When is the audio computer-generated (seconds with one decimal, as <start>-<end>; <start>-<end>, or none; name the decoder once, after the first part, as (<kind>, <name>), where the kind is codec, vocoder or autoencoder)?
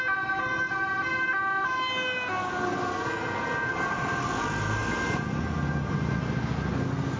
none